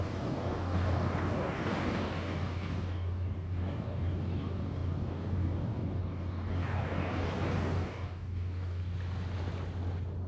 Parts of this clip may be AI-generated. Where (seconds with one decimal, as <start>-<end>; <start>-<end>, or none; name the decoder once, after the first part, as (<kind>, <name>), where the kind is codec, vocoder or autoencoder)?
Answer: 0.0-8.8 (codec, DAC)